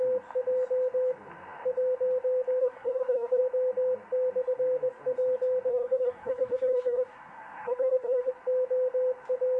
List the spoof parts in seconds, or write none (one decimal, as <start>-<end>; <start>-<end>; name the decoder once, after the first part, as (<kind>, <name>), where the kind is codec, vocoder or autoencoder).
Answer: 2.6-3.4 (codec, SNAC); 5.7-8.3